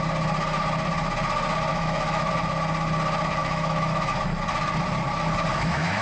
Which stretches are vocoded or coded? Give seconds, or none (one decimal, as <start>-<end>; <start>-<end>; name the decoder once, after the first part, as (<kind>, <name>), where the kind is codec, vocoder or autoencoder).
1.7-2.3 (autoencoder, DAC-VAE); 3.4-4.2; 5.5-6.0